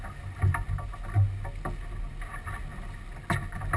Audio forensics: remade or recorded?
recorded